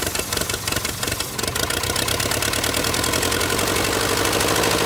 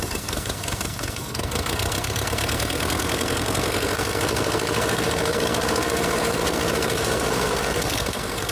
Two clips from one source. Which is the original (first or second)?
first